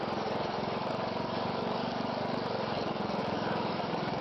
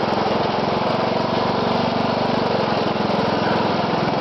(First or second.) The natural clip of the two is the second